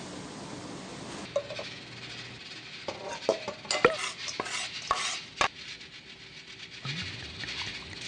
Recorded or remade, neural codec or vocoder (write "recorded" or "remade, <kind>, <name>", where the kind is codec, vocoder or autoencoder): recorded